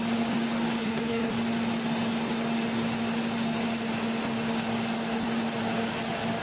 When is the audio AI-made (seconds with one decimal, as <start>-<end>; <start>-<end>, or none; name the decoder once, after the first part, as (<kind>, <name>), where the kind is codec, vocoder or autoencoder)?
0.8-1.3 (codec, SNAC)